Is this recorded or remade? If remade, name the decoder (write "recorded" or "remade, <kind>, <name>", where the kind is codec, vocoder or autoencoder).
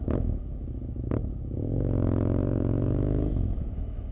remade, autoencoder, DAC-VAE